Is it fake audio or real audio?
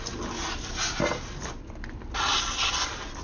real